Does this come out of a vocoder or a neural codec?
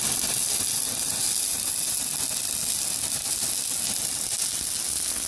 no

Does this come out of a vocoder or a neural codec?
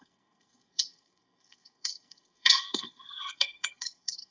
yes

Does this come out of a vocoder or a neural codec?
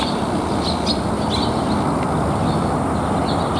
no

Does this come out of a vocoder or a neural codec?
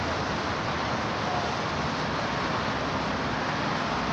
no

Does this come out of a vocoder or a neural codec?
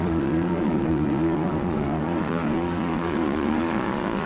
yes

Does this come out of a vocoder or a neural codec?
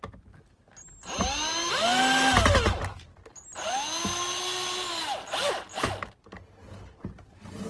no